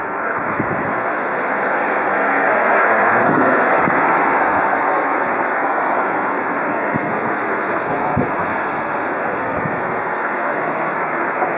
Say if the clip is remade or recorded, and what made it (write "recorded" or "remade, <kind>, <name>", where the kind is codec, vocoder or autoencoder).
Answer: remade, codec, SNAC